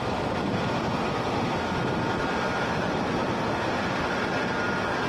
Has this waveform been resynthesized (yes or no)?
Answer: no